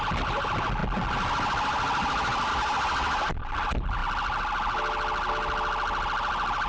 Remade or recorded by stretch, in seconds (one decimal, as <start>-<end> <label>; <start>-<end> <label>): 0.0-6.7 recorded